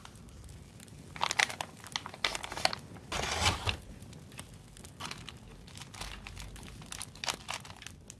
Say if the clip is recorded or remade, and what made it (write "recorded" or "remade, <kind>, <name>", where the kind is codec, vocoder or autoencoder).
recorded